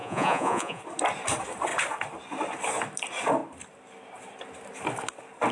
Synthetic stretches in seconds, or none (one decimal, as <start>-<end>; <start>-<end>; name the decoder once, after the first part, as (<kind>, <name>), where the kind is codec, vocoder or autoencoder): 0.0-0.8 (vocoder, Vocos)